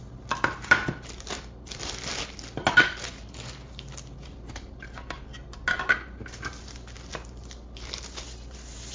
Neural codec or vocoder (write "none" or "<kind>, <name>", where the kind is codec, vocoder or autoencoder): none